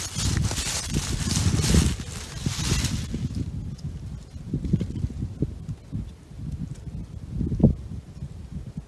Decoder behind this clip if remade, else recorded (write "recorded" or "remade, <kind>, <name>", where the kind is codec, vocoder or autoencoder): recorded